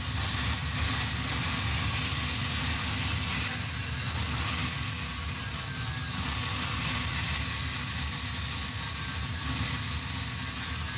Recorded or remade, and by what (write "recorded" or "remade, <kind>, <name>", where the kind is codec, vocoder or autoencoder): recorded